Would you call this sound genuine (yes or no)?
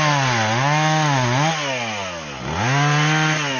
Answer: yes